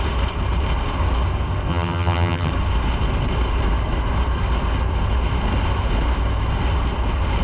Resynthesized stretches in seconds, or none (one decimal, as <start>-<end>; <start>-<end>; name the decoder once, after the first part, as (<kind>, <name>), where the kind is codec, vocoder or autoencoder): 1.7-2.5 (vocoder, HiFi-GAN)